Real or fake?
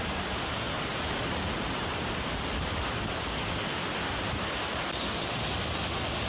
real